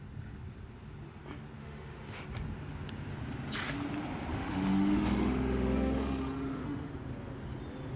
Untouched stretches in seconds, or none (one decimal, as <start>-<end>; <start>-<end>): 0.0-1.6; 2.2-4.3; 6.9-8.0